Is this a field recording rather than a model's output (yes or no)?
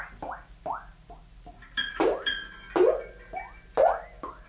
yes